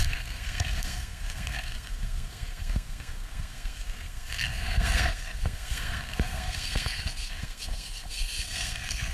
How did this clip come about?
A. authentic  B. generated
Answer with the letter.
B